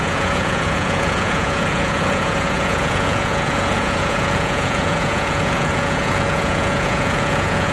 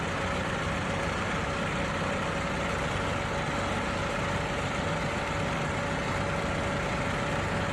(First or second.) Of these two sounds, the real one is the second